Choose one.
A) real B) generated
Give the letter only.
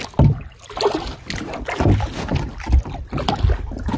A